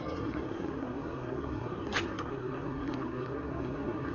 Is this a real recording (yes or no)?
no